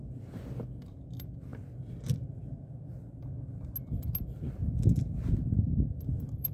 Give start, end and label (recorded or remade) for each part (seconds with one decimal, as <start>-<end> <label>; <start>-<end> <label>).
0.0-1.5 remade; 1.5-5.3 recorded; 5.3-6.5 remade